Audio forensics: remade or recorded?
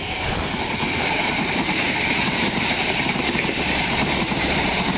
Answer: remade